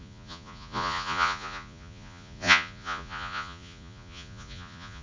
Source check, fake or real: fake